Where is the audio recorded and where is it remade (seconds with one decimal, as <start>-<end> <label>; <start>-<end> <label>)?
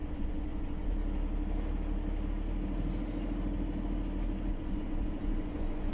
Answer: 0.0-1.0 remade; 1.0-4.5 recorded; 4.5-5.9 remade